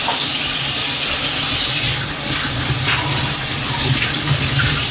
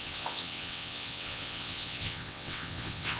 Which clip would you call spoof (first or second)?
second